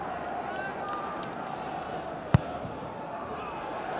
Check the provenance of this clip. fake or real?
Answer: real